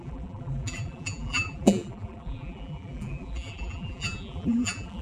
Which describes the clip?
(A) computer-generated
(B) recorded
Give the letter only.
A